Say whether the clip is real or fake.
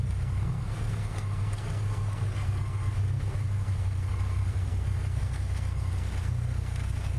fake